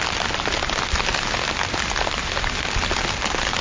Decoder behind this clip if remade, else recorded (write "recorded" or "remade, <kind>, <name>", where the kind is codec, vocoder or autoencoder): recorded